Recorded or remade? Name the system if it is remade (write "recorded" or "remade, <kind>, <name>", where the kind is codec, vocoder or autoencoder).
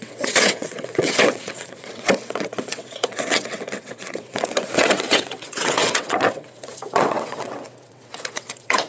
remade, vocoder, WaveNeXt